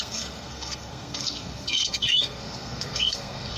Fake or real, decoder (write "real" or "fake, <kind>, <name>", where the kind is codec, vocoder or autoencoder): fake, codec, SNAC